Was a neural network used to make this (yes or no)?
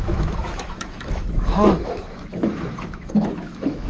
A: yes